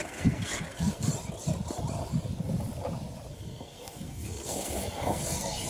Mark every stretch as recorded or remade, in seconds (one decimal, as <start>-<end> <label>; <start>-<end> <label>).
0.0-1.1 remade; 1.1-3.3 recorded; 3.3-5.7 remade